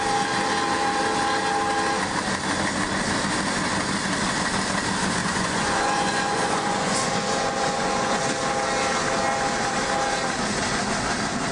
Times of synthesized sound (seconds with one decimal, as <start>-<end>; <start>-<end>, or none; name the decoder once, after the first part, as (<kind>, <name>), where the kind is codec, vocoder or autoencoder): 5.2-8.2 (vocoder, Vocos)